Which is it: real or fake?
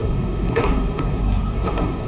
fake